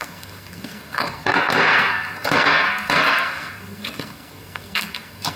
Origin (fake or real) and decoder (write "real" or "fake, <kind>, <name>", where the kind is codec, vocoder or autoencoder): fake, codec, SNAC